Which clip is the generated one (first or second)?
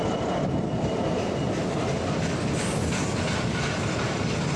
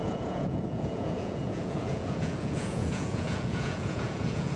second